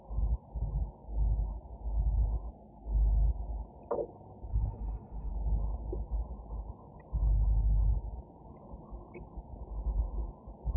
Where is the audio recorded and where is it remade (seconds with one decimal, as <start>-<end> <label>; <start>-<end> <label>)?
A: 0.0-4.5 recorded; 4.5-5.3 remade; 5.3-10.8 recorded